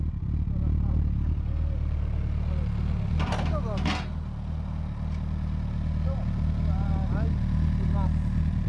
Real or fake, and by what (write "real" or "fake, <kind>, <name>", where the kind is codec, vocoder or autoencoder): real